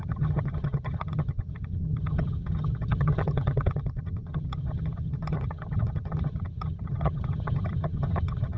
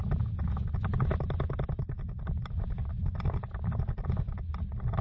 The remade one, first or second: first